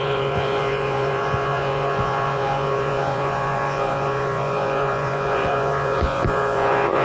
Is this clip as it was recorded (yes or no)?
no